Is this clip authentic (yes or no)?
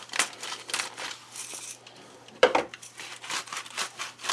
no